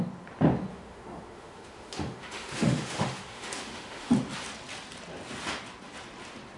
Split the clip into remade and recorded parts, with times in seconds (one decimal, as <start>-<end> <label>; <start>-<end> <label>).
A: 0.0-0.7 recorded; 0.7-4.1 remade; 4.1-6.6 recorded